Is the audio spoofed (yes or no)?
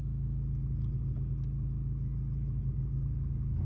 no